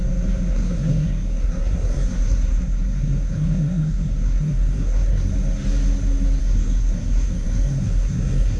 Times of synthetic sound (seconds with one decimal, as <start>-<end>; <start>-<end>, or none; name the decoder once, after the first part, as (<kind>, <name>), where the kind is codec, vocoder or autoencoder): 0.5-5.3 (codec, SNAC); 6.4-8.6